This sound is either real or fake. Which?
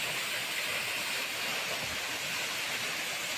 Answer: real